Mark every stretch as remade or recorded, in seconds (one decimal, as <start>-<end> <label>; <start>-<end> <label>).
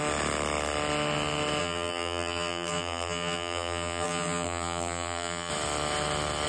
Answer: 0.0-1.6 recorded; 1.6-5.5 remade; 5.5-6.5 recorded